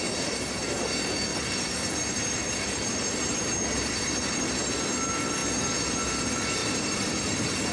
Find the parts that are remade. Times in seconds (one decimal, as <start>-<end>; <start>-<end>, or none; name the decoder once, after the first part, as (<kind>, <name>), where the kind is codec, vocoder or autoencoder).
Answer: 1.3-4.7 (vocoder, BigVGAN v2); 6.6-7.7